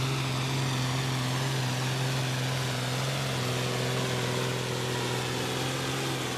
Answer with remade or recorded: recorded